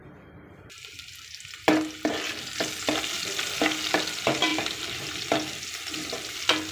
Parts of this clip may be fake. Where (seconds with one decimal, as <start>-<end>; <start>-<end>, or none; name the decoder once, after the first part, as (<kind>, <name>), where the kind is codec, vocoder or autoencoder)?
0.0-1.3 (vocoder, BigVGAN v2); 4.5-6.7